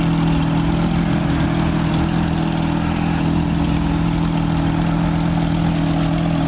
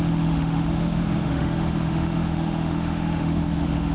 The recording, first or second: first